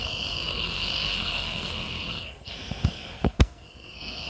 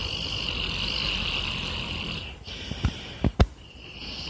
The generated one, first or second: first